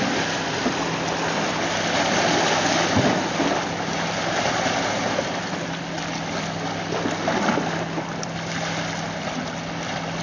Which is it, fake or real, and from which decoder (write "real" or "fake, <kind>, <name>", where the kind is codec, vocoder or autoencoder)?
real